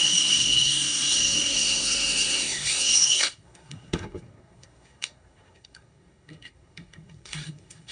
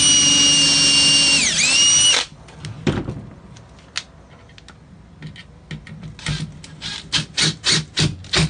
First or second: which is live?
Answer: second